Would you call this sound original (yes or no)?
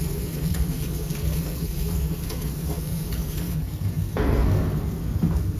no